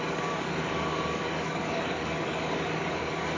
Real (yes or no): no